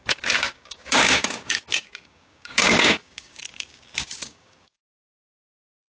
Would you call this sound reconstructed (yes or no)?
yes